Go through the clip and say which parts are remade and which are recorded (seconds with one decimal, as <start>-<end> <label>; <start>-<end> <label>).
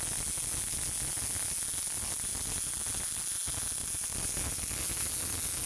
0.0-5.7 recorded